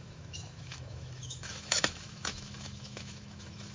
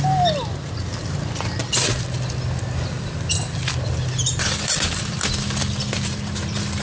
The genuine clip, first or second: second